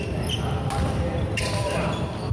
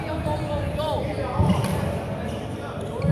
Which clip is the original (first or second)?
second